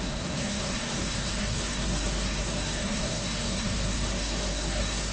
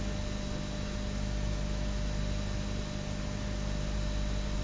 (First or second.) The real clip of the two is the second